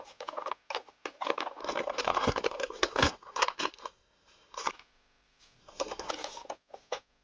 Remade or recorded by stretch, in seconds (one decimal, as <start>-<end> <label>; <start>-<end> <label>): 0.0-1.6 recorded; 1.6-4.7 remade; 4.7-5.6 recorded; 5.6-6.1 remade; 6.1-7.2 recorded